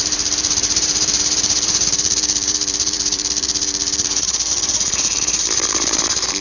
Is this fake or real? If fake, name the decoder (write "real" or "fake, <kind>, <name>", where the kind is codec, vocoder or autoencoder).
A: fake, vocoder, BigVGAN v2